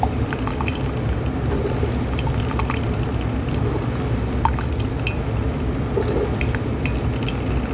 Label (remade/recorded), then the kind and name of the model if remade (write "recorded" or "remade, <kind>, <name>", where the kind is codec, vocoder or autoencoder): recorded